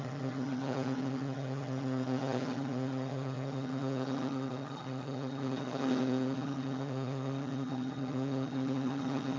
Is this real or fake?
fake